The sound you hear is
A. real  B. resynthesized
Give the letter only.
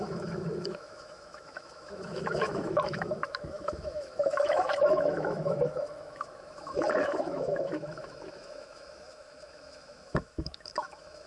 B